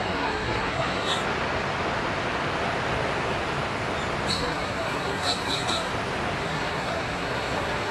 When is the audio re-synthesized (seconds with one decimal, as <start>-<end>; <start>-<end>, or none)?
0.0-1.2; 4.3-5.9; 6.4-7.9